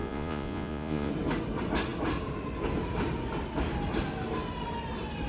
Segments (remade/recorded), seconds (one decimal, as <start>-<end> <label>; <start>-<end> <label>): 0.0-1.1 remade; 1.1-5.3 recorded